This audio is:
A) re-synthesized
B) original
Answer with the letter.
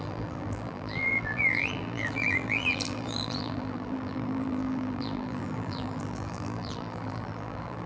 A